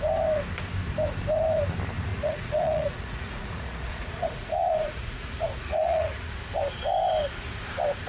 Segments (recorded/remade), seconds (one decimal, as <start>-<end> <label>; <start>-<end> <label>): 0.0-2.1 recorded; 2.1-6.3 remade; 6.3-8.1 recorded